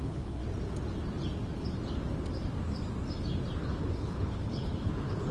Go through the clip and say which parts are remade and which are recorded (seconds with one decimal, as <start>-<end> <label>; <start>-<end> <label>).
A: 0.0-0.4 remade; 0.4-3.6 recorded; 3.6-5.3 remade